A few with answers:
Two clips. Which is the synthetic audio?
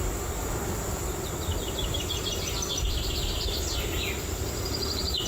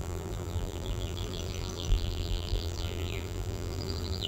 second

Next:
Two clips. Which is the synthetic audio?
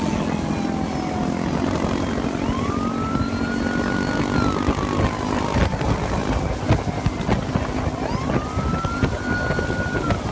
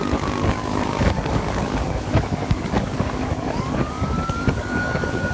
second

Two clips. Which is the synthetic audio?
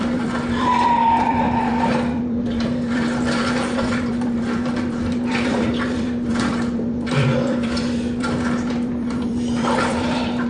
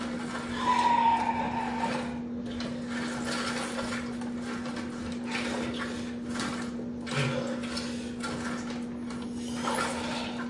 first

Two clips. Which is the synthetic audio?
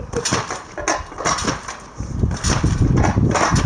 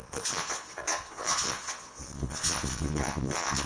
second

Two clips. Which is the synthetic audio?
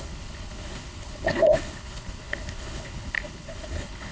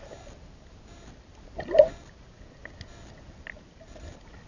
first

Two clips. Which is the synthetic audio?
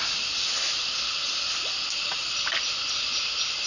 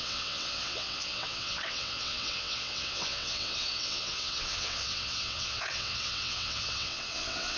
second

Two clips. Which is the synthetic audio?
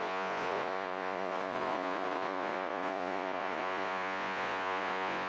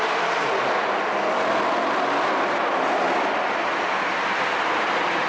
first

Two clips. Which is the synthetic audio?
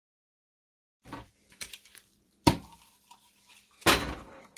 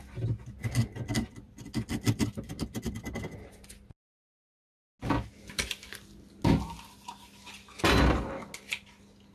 first